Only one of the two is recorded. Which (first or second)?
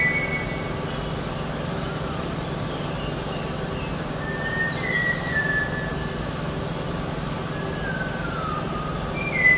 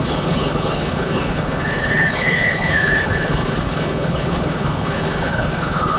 first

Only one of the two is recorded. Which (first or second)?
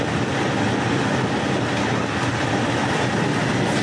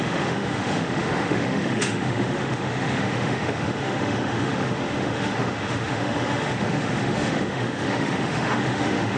first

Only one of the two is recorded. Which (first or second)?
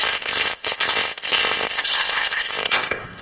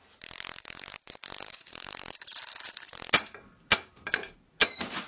second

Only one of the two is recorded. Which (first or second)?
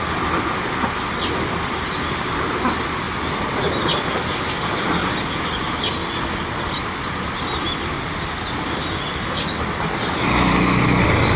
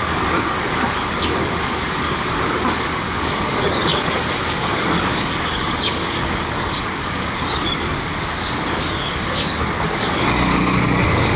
first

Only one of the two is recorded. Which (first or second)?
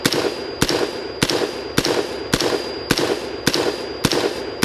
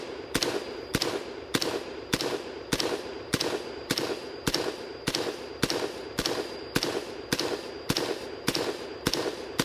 first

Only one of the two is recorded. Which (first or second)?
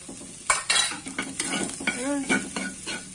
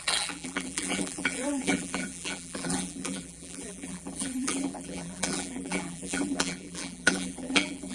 first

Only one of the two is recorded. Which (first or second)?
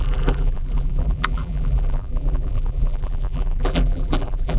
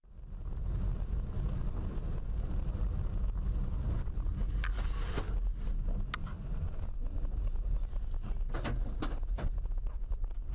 second